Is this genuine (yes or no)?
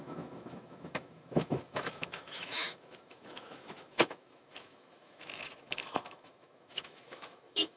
no